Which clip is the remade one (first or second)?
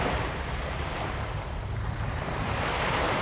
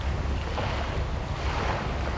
first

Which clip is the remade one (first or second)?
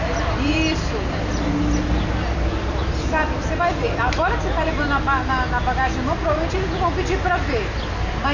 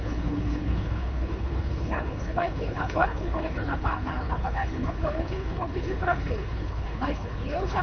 second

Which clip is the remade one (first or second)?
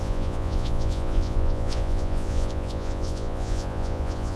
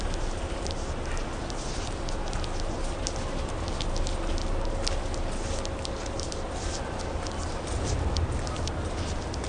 first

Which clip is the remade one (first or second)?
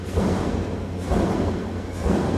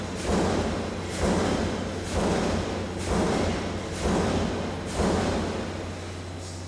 first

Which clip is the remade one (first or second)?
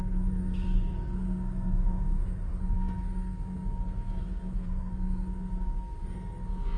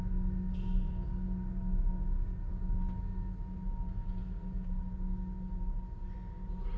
first